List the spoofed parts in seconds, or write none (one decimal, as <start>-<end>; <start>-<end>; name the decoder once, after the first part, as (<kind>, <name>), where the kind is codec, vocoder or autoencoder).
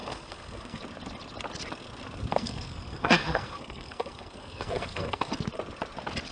0.0-0.8 (codec, SNAC); 2.3-5.3